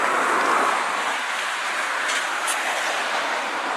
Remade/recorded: recorded